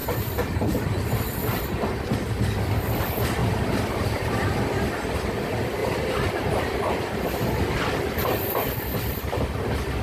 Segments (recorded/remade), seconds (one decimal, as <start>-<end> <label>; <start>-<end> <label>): 0.0-1.0 remade; 1.0-3.4 recorded; 3.4-4.9 remade; 4.9-5.8 recorded; 5.8-9.4 remade; 9.4-10.0 recorded